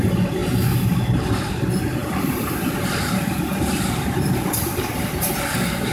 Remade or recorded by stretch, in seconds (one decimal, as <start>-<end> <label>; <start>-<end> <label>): 0.0-0.4 remade; 0.4-1.5 recorded; 1.5-5.9 remade